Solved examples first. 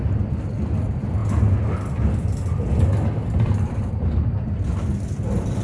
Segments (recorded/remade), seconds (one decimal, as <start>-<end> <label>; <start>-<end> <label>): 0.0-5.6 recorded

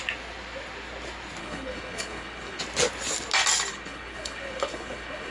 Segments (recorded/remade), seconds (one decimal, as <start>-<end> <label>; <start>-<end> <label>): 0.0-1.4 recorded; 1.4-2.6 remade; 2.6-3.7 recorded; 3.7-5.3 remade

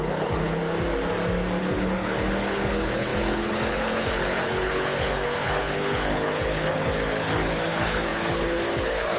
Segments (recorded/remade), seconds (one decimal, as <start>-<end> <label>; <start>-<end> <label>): 0.0-0.6 remade; 0.6-1.6 recorded; 1.6-9.2 remade